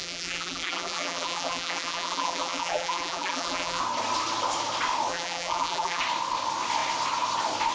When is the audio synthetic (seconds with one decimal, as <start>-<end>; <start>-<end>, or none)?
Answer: 0.0-3.8; 5.1-6.0